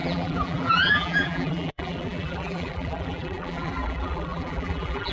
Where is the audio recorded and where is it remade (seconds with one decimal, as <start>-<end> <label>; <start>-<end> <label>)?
0.0-5.1 remade